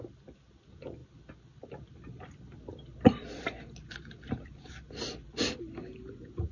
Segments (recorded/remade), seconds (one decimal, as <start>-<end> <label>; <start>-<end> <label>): 0.0-6.5 recorded